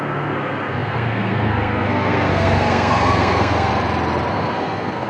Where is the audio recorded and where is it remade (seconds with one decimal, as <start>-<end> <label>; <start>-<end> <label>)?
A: 0.0-3.7 remade; 3.7-4.3 recorded; 4.3-5.1 remade